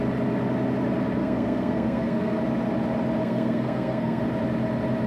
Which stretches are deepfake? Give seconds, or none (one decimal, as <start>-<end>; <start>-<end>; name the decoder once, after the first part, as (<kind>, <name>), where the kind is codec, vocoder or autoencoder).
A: 1.2-2.4 (codec, SNAC); 3.2-4.2

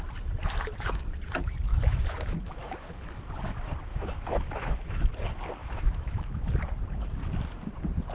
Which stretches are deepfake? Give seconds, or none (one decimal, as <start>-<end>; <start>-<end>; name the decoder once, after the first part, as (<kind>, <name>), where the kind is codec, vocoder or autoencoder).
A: 1.7-2.9 (autoencoder, DAC-VAE); 3.9-5.1; 5.6-6.4

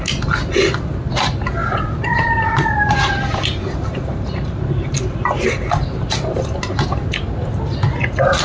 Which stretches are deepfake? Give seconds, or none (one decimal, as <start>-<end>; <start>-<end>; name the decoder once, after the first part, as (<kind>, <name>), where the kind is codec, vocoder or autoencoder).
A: 1.6-6.6 (vocoder, BigVGAN v2)

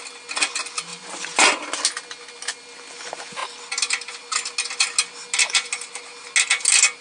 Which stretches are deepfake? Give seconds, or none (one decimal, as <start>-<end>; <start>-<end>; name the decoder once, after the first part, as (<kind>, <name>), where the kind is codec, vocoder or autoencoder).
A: none

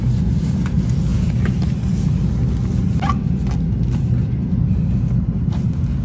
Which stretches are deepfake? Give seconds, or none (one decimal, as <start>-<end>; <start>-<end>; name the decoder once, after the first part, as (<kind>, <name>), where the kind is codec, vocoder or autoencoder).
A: none